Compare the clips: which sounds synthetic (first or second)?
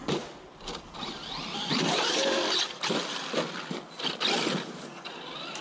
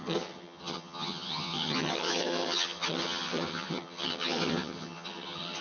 second